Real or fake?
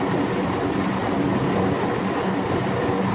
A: real